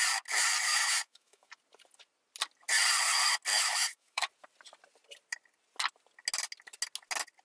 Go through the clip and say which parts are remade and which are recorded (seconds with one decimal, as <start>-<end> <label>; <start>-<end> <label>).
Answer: 0.0-0.7 recorded; 0.7-1.5 remade; 1.5-3.5 recorded; 3.5-4.3 remade; 4.3-7.4 recorded